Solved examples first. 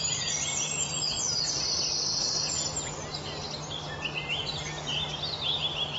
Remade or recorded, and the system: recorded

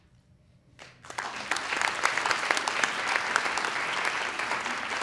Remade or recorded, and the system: recorded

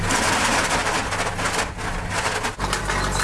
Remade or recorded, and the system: recorded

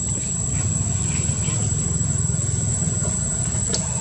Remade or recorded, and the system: recorded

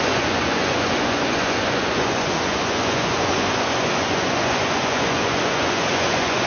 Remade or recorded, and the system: remade, vocoder, Vocos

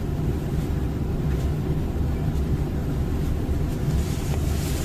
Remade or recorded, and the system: recorded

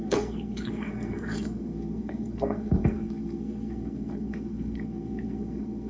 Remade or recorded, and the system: remade, codec, SNAC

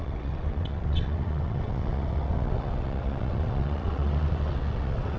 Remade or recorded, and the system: remade, vocoder, WaveNeXt